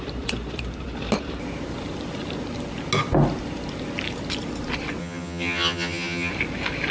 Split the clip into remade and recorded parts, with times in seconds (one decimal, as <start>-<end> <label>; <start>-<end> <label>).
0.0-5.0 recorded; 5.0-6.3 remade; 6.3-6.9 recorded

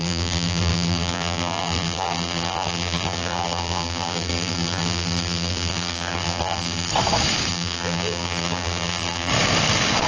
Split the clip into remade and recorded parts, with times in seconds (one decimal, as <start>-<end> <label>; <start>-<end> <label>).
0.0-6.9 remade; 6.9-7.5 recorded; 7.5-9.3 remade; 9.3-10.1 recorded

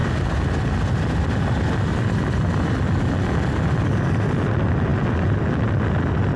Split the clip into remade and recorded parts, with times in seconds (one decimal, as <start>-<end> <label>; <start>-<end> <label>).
0.0-6.4 recorded